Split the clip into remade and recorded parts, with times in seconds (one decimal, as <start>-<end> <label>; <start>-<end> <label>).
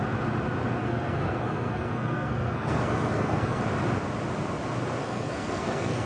0.0-0.8 recorded; 0.8-3.6 remade; 3.6-5.0 recorded; 5.0-6.1 remade